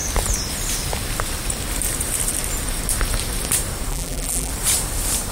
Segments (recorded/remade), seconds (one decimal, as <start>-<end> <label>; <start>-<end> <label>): 0.0-3.9 recorded; 3.9-4.5 remade; 4.5-5.3 recorded